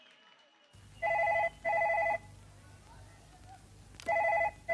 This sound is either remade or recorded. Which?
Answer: recorded